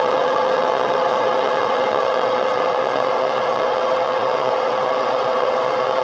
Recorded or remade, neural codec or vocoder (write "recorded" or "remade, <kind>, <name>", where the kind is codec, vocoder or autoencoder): remade, vocoder, WaveNeXt